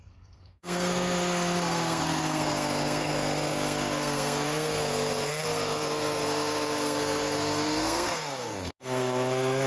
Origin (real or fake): fake